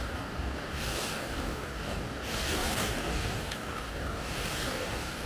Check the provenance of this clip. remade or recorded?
remade